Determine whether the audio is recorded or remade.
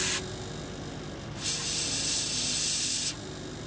recorded